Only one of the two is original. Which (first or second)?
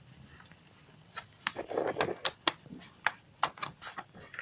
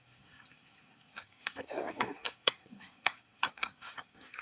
first